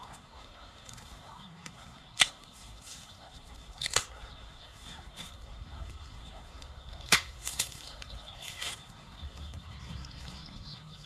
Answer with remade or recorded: remade